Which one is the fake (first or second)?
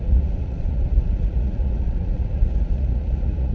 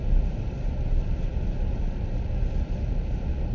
first